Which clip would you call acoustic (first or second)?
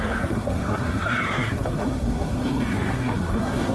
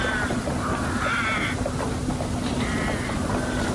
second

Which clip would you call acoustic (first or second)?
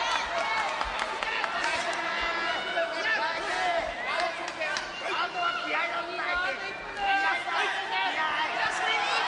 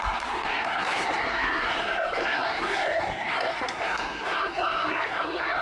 first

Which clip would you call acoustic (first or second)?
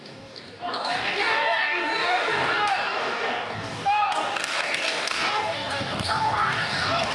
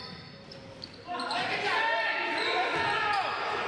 second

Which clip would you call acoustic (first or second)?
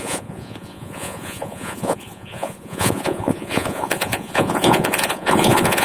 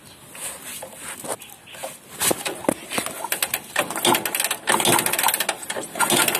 second